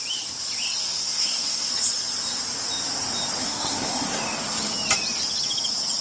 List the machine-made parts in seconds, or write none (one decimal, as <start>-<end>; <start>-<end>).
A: 0.8-1.7; 3.4-4.2